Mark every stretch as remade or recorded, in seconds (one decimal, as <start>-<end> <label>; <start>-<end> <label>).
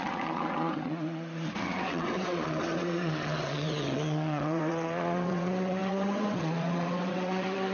0.0-7.7 remade